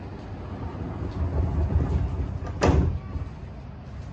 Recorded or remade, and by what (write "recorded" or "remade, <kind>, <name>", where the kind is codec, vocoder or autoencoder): recorded